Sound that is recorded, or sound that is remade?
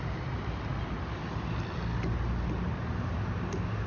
recorded